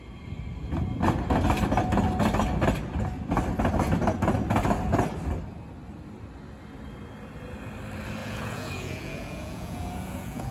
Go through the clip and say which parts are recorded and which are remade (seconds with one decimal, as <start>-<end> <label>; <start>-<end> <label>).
0.0-8.2 recorded; 8.2-10.5 remade